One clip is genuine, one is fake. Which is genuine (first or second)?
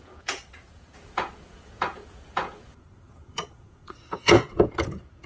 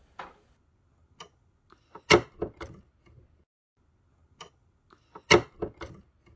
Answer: second